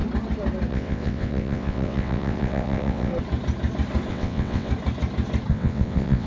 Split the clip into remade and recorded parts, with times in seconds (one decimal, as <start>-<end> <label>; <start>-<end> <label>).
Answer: 0.0-0.7 recorded; 0.7-3.1 remade; 3.1-4.1 recorded; 4.1-4.7 remade; 4.7-5.5 recorded; 5.5-6.3 remade